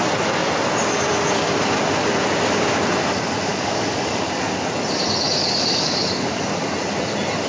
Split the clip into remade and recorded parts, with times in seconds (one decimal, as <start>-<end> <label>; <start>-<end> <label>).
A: 0.0-3.5 recorded; 3.5-4.2 remade; 4.2-5.4 recorded; 5.4-6.4 remade; 6.4-7.5 recorded